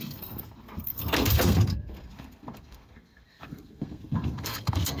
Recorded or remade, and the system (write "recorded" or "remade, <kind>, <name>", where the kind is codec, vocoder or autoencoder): remade, codec, SNAC